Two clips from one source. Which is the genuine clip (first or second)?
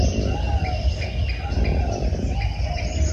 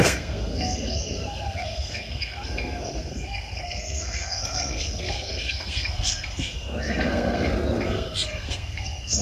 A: first